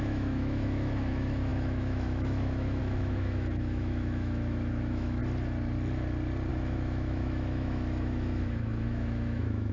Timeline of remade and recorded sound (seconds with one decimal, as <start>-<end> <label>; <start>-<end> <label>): 0.0-5.2 remade; 5.2-6.5 recorded; 6.5-9.7 remade